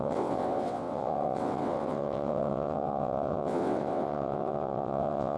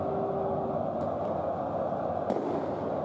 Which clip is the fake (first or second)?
first